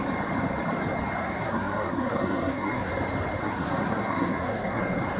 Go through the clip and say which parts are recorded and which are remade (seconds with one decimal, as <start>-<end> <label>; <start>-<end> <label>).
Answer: 0.0-1.2 recorded; 1.2-2.9 remade; 2.9-3.4 recorded; 3.4-4.8 remade; 4.8-5.2 recorded